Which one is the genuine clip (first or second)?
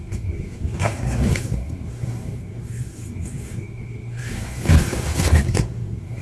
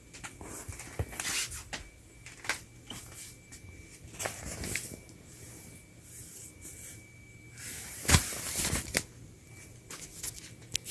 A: second